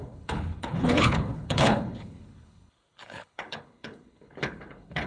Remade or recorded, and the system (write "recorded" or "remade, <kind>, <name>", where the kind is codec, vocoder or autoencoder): remade, codec, HILCodec